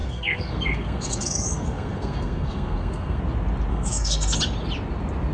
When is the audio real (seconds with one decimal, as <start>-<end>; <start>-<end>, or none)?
3.2-3.7; 4.4-5.3